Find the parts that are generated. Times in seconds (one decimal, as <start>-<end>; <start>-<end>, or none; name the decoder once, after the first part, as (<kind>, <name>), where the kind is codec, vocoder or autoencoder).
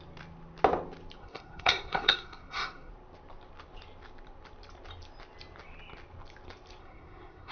1.2-2.9 (codec, SNAC); 6.8-7.5